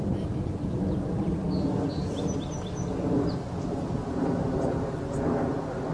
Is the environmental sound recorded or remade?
recorded